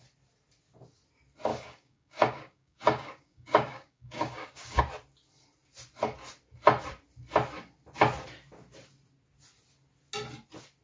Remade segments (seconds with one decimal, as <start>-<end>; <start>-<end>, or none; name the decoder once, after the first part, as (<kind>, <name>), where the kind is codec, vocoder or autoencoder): 1.5-4.8 (codec, DAC)